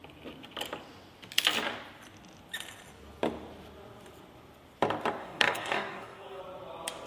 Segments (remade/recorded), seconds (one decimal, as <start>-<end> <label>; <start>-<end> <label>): 0.0-5.2 recorded; 5.2-6.4 remade; 6.4-7.1 recorded

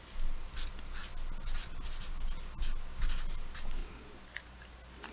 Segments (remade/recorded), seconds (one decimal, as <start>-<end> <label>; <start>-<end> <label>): 0.0-5.1 recorded

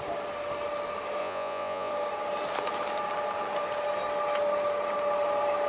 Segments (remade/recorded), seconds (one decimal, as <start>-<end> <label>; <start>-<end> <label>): 0.0-1.2 recorded; 1.2-1.9 remade; 1.9-5.7 recorded

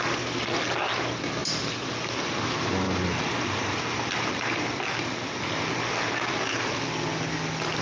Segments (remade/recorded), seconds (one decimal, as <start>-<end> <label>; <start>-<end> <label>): 0.0-7.8 recorded